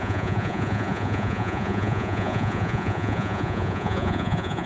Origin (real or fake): fake